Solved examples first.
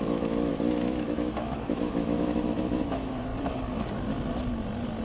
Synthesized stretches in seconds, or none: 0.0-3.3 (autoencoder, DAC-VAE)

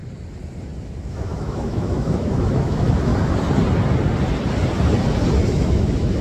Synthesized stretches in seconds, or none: 1.1-3.1 (autoencoder, DAC-VAE); 5.5-6.2

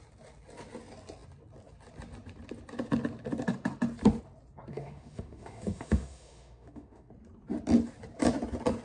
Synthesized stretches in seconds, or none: 4.7-7.1 (autoencoder, DAC-VAE)

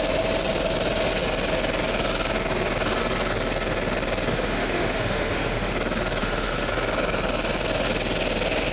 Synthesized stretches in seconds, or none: 4.3-5.7 (autoencoder, DAC-VAE); 6.2-6.7